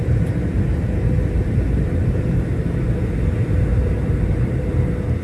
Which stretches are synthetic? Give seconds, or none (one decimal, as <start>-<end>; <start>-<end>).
0.0-2.8; 3.7-4.7